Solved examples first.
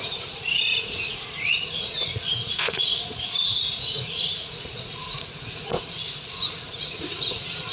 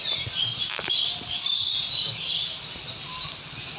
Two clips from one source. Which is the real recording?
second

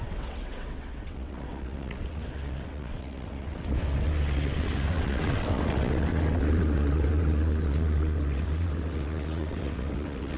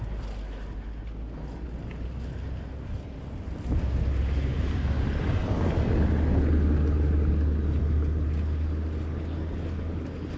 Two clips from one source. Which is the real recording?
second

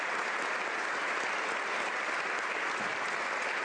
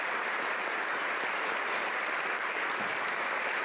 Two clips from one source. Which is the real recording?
first